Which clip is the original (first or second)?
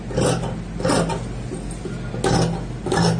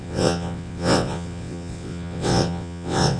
first